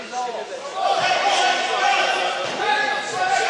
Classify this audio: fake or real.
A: real